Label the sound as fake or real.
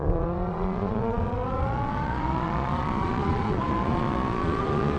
fake